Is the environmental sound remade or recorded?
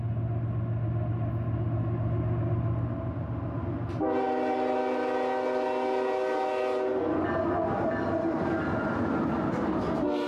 recorded